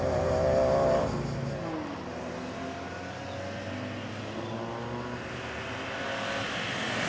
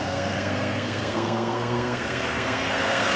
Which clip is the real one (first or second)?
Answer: first